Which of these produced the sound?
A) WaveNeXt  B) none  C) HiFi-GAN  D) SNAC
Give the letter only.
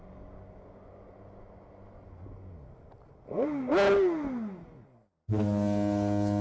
B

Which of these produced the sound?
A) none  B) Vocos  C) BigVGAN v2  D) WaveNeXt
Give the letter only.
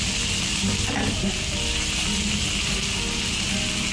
A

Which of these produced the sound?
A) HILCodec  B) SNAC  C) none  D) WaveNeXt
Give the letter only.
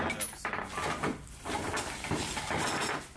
C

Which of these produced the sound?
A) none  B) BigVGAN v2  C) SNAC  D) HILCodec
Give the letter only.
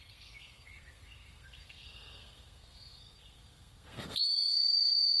C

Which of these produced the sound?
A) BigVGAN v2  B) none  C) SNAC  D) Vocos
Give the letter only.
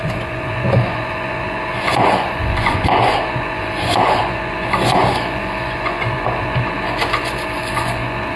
D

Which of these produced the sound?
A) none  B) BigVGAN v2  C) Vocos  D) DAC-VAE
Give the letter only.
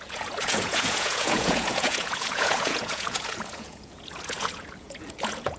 C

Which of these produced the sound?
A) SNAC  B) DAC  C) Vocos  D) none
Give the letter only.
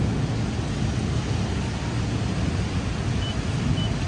D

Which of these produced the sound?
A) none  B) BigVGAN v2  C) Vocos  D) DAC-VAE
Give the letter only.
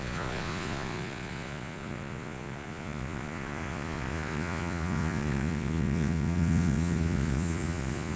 C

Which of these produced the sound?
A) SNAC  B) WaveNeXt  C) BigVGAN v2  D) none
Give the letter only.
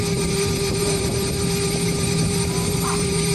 C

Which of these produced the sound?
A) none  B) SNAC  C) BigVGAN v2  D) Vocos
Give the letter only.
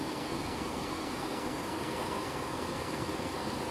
B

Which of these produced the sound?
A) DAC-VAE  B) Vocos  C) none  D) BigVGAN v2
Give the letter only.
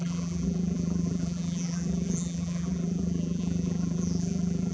D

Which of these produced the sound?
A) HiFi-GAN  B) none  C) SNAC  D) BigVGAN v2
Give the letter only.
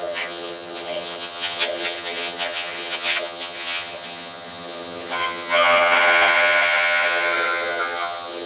A